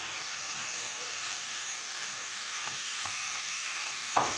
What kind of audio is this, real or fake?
fake